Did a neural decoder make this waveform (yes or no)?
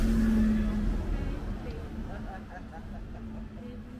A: no